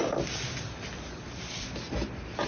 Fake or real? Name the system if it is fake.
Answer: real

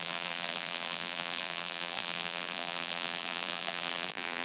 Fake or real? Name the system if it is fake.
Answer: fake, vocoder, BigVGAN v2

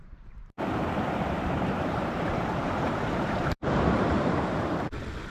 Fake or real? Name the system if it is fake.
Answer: fake, vocoder, BigVGAN v2